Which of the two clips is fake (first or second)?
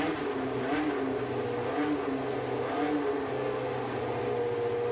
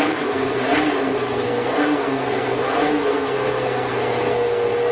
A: second